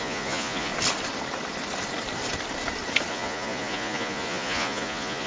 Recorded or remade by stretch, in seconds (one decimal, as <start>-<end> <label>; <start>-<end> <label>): 0.0-0.7 remade; 0.7-3.1 recorded; 3.1-5.3 remade